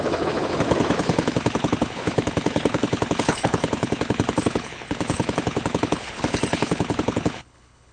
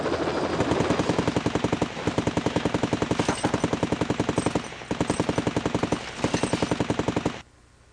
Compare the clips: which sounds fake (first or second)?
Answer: first